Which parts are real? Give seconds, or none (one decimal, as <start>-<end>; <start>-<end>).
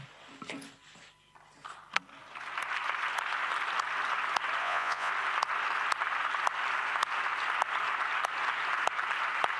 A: 0.0-4.6; 5.1-9.6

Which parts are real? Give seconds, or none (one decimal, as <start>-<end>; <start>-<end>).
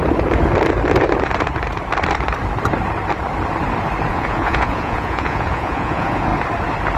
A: 0.0-4.1; 6.3-7.0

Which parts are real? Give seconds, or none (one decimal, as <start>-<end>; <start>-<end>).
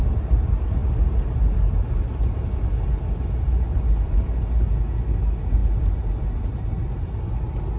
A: 0.0-7.8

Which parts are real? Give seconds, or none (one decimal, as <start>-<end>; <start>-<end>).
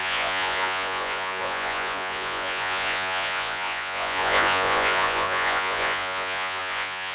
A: none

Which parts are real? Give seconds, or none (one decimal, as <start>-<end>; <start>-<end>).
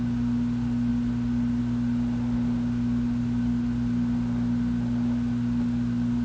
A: 0.0-6.2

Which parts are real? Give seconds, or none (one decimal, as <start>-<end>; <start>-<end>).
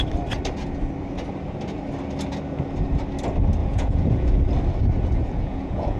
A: 0.0-3.6; 4.4-4.9